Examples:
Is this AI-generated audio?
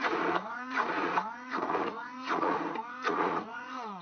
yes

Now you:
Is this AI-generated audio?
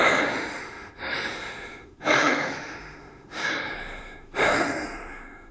yes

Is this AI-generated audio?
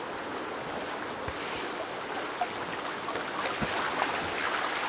no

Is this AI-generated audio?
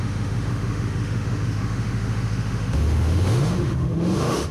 yes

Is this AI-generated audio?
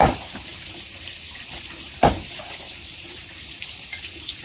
yes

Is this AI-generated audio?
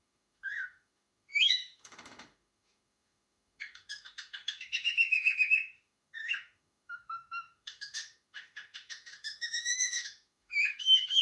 yes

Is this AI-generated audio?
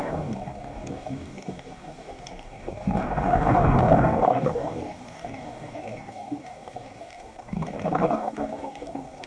yes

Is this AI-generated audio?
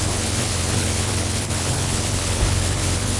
yes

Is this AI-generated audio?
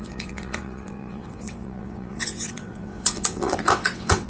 yes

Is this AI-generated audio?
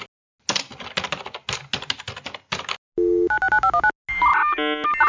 no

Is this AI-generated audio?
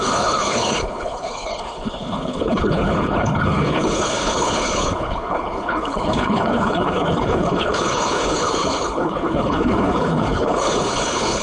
yes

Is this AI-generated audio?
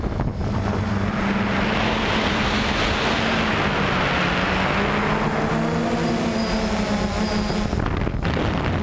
no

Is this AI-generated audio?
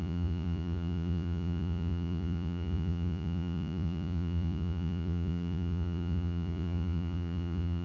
yes